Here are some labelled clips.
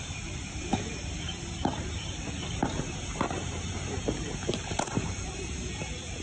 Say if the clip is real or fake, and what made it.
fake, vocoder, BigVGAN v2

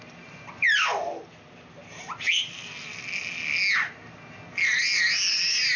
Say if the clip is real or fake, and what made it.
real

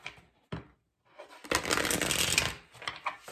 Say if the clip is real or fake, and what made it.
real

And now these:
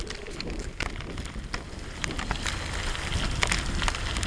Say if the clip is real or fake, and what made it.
real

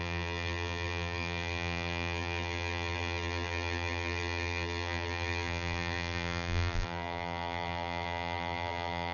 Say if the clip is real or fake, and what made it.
fake, vocoder, BigVGAN v2